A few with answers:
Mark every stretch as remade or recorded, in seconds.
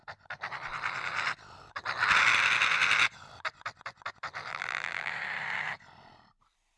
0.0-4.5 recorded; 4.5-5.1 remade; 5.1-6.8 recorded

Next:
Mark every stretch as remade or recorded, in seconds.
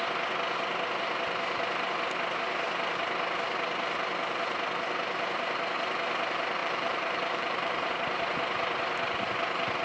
0.0-6.6 recorded; 6.6-7.9 remade; 7.9-9.8 recorded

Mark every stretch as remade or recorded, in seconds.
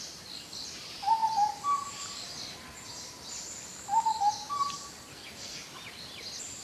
0.0-5.1 recorded; 5.1-5.6 remade; 5.6-6.6 recorded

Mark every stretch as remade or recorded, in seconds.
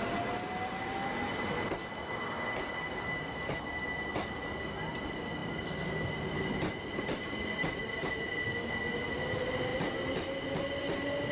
0.0-11.3 recorded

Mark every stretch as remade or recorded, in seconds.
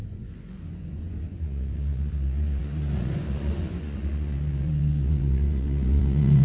0.0-6.4 remade